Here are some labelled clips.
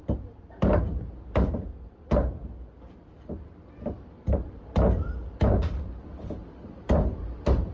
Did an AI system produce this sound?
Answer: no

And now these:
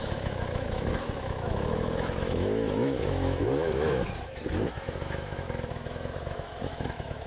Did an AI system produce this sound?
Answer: yes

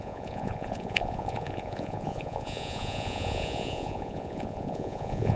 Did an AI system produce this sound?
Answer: yes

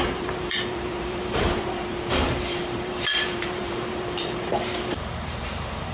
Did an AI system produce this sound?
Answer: yes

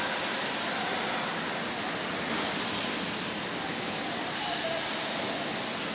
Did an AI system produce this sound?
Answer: no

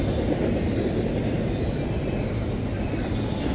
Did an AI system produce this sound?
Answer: no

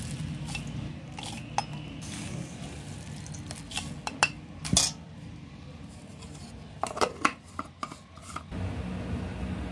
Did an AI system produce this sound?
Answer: no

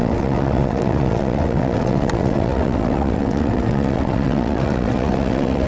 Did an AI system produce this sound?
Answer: yes